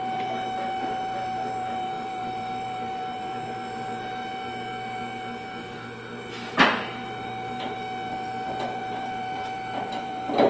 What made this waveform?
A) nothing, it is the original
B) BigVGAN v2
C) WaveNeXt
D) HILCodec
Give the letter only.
B